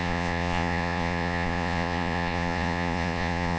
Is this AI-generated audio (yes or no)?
yes